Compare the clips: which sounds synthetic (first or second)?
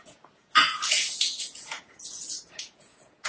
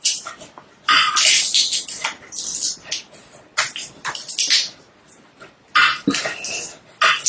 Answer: first